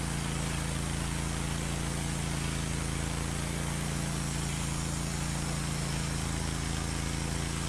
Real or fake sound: real